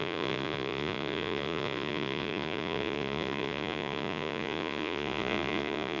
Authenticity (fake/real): fake